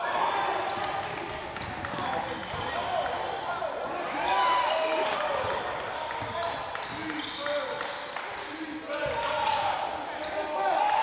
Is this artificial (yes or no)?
no